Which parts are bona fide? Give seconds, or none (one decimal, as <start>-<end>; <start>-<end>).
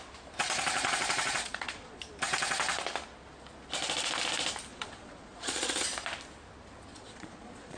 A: 0.0-0.7; 2.0-4.7; 5.8-6.9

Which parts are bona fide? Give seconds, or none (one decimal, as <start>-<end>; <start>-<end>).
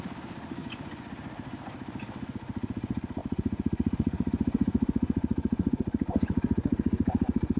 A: 0.0-0.6; 1.1-3.2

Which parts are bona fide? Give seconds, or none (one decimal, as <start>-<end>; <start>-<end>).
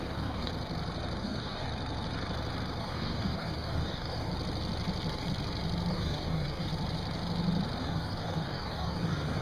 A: 0.5-1.2; 1.7-2.8; 4.3-5.9; 6.7-7.8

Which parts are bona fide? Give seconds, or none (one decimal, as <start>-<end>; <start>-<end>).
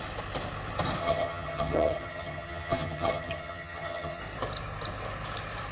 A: 0.0-1.0; 4.2-5.7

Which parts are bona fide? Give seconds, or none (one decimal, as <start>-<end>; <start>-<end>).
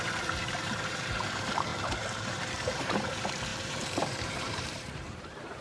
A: none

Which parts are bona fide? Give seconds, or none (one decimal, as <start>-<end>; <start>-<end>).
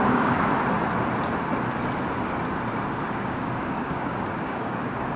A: 0.5-3.1